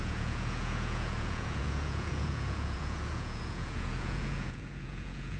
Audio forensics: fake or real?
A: fake